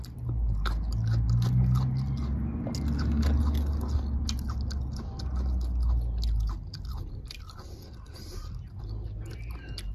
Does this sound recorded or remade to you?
recorded